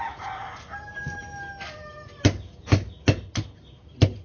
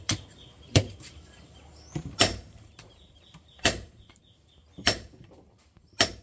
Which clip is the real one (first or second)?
first